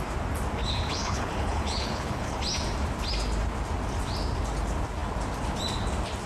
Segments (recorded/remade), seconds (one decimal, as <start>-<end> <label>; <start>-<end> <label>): 0.0-0.6 recorded; 0.6-2.4 remade; 2.4-6.3 recorded